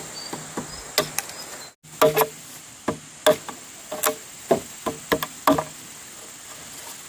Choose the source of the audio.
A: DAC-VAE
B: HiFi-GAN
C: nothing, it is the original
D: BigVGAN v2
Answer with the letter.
C